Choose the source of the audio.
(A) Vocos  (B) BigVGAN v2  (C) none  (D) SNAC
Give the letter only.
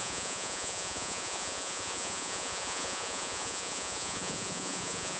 A